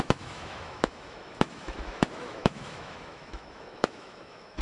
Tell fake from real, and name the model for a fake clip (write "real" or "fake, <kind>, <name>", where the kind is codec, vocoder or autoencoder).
fake, autoencoder, DAC-VAE